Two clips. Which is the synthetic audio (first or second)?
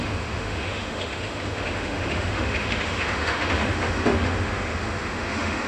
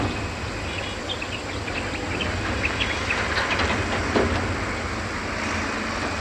first